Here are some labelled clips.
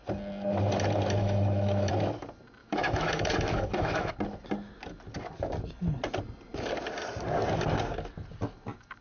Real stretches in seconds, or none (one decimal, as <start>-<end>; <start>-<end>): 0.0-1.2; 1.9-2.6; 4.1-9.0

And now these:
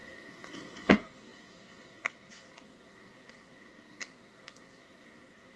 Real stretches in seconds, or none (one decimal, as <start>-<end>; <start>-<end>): none

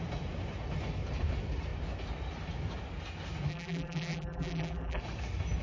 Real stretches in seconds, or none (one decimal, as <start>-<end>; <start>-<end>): 0.0-3.5; 5.0-5.6